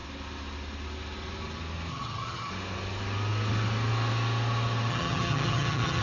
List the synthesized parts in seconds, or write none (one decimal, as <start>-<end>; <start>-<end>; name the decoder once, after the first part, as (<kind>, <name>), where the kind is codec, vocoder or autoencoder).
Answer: 1.9-2.5 (vocoder, HiFi-GAN); 4.9-6.0